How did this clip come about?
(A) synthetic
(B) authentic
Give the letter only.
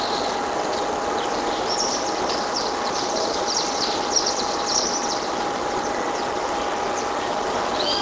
B